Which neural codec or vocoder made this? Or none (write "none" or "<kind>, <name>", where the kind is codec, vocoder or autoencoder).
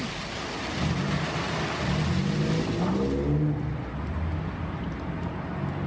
none